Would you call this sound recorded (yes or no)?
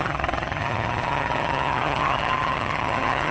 no